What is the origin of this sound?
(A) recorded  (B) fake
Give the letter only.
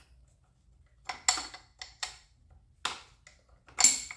A